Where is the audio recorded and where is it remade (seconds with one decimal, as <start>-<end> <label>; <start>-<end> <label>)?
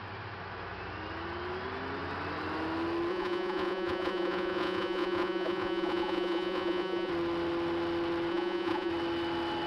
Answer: 0.0-3.1 recorded; 3.1-7.1 remade; 7.1-8.3 recorded; 8.3-8.9 remade; 8.9-9.7 recorded